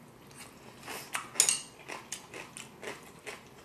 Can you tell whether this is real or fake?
real